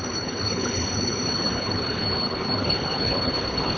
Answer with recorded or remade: remade